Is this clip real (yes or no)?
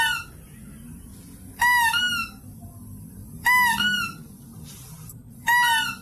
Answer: yes